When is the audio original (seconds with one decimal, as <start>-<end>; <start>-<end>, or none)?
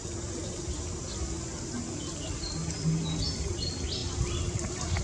0.0-4.0